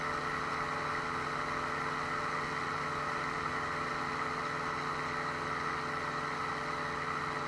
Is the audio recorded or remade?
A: recorded